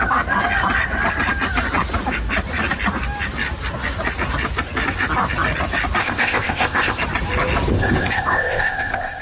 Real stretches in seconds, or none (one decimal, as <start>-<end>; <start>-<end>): 0.0-6.0; 7.0-7.7